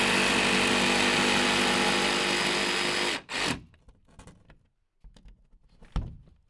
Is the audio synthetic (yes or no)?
no